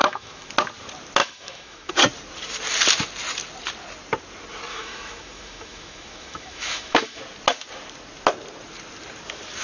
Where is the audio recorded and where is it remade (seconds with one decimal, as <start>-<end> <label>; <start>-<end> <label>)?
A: 0.0-0.5 remade; 0.5-1.2 recorded; 1.2-1.9 remade; 1.9-4.7 recorded; 4.7-7.2 remade; 7.2-9.6 recorded